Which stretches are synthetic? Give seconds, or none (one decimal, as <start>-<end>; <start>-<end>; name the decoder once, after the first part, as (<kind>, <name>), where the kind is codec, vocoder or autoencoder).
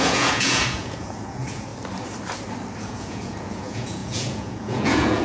0.0-1.7 (vocoder, Vocos); 2.8-5.2